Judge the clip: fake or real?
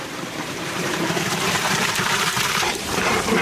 fake